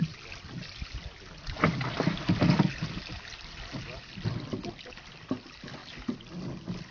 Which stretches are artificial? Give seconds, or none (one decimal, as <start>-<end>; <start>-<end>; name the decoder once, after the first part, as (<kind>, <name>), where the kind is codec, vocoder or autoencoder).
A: none